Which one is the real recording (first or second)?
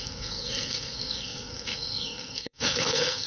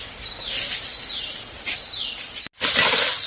second